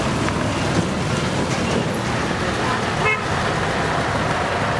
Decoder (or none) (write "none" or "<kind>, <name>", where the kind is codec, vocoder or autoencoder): none